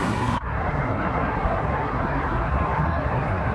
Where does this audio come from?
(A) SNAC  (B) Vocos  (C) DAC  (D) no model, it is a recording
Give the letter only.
A